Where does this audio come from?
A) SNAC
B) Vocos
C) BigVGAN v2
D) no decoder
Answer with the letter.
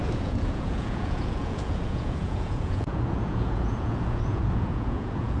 B